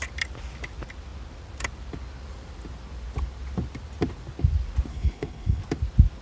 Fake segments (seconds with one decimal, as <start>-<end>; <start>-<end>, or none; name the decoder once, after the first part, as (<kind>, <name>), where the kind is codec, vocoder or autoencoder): 4.9-5.6 (codec, HILCodec)